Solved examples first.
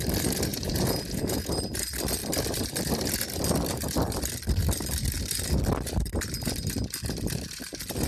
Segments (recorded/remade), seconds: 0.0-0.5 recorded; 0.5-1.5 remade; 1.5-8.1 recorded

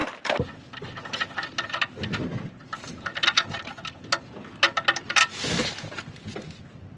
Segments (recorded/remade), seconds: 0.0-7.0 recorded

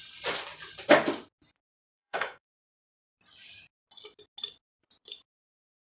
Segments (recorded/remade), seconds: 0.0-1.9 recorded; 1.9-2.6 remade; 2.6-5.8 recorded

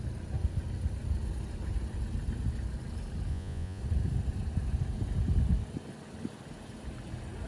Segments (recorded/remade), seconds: 0.0-3.3 recorded; 3.3-3.8 remade; 3.8-7.5 recorded

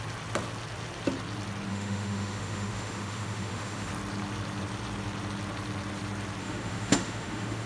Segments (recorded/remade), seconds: 0.0-1.7 recorded; 1.7-3.9 remade; 3.9-6.4 recorded; 6.4-7.7 remade

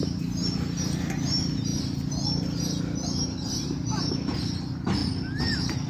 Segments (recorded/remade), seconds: 0.0-5.9 recorded

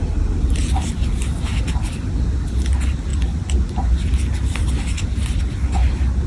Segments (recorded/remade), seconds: 0.0-6.3 recorded